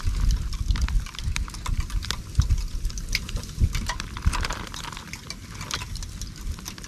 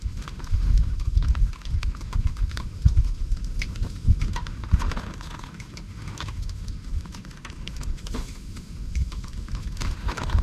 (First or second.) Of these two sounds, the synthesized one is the second